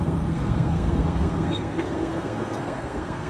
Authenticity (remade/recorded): remade